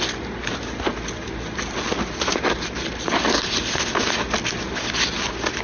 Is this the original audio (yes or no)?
yes